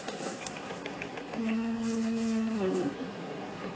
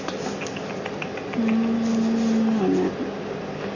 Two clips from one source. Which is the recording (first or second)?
second